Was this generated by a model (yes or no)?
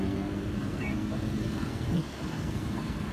yes